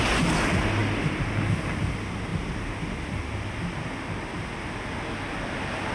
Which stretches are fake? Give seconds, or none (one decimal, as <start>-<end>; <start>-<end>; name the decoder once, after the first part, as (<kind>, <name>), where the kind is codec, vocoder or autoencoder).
none